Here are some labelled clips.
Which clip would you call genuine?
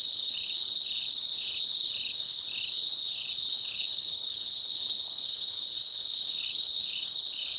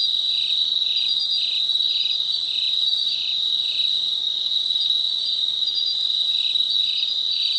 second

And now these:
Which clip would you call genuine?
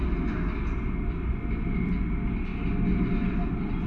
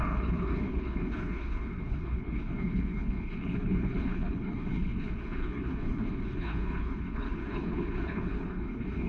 first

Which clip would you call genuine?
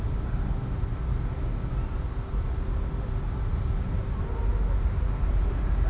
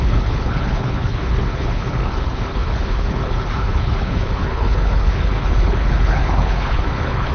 first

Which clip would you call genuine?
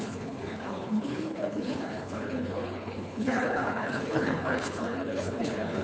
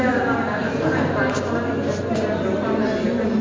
second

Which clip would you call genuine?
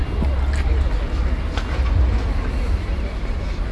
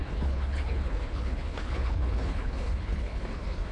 first